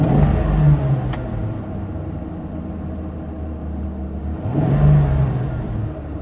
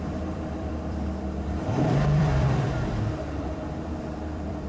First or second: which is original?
first